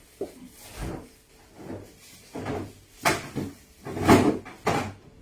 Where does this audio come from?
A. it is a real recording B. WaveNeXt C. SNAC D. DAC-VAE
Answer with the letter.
A